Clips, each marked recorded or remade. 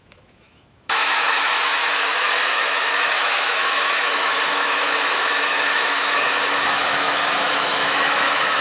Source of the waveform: remade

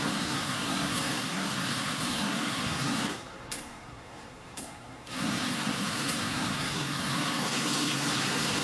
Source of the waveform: remade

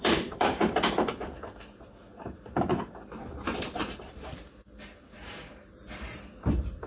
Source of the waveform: remade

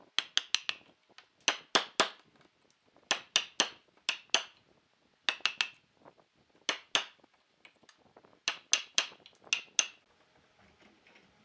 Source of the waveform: recorded